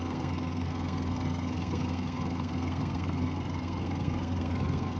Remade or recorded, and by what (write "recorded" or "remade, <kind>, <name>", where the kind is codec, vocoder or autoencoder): remade, codec, SNAC